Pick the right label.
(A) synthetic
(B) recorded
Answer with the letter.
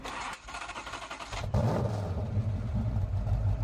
B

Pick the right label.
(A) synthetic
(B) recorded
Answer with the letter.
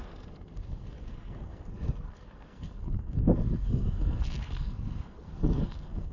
A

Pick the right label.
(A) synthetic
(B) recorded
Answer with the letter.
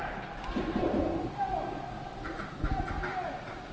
B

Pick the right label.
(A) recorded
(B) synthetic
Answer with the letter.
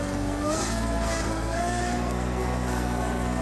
B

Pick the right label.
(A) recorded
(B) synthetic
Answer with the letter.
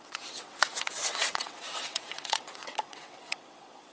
B